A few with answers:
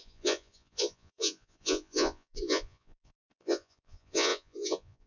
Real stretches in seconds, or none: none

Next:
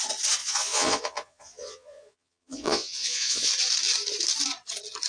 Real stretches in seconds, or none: 0.0-0.4; 3.5-5.1

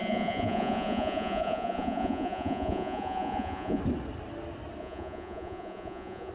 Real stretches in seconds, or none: 3.8-4.8

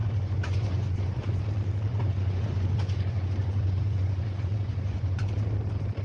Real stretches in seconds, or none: 1.4-1.9; 5.3-6.0

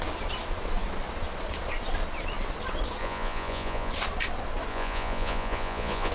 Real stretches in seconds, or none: 0.0-3.0; 3.9-4.7

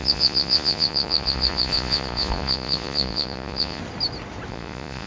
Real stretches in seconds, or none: 3.8-4.5

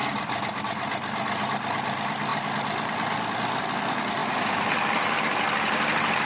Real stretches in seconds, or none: 0.0-6.3